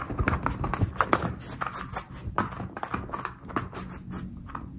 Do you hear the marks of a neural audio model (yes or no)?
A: no